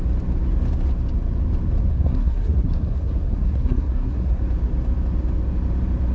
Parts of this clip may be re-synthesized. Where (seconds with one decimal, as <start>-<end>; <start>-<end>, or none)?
1.9-4.4